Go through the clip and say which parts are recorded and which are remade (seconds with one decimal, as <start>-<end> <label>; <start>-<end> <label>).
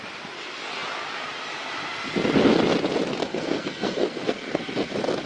0.0-3.2 recorded; 3.2-4.6 remade; 4.6-5.3 recorded